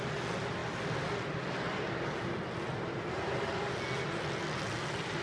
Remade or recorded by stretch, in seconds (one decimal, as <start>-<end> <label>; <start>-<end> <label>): 0.0-5.2 recorded